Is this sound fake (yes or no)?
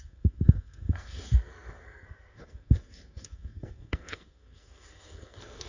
yes